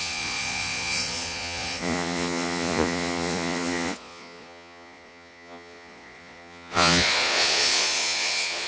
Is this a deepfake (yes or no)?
yes